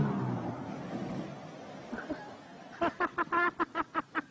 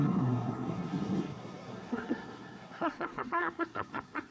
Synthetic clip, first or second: second